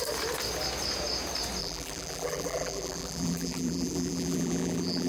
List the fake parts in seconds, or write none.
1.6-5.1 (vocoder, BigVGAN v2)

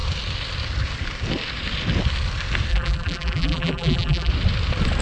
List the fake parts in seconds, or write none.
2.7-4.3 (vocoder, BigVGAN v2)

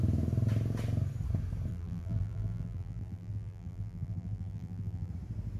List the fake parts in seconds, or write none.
1.7-5.1 (vocoder, BigVGAN v2)